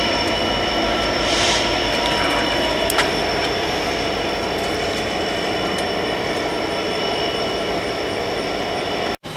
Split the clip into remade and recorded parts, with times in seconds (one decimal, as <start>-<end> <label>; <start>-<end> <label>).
0.0-9.4 remade